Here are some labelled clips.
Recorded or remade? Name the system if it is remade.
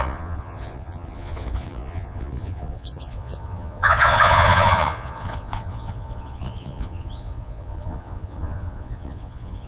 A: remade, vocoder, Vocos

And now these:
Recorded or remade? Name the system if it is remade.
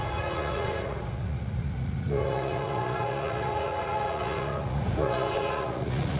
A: remade, vocoder, Vocos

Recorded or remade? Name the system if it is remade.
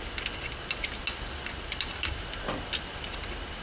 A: recorded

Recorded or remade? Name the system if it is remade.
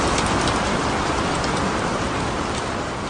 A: recorded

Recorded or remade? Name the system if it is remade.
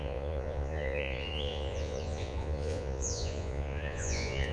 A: remade, vocoder, Vocos